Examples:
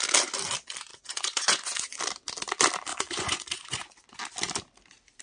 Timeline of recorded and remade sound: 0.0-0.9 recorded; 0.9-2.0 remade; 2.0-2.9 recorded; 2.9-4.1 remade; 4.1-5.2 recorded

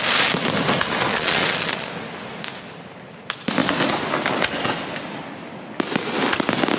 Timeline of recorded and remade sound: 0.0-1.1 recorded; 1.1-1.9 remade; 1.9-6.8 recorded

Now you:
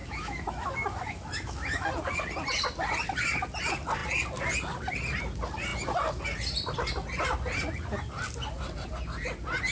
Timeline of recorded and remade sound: 0.0-1.9 remade; 1.9-9.7 recorded